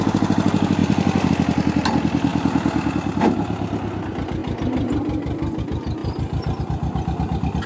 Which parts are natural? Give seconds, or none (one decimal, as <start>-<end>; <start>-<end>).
0.0-0.8; 1.3-7.7